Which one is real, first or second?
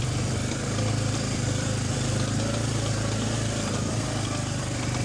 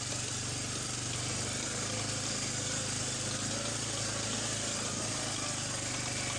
second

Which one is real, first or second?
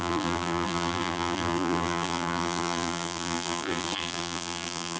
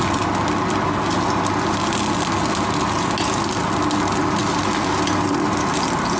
second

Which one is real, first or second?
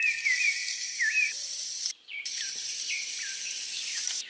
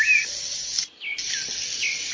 second